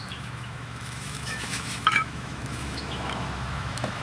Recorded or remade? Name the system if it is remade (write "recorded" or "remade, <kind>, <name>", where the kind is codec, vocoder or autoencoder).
remade, autoencoder, DAC-VAE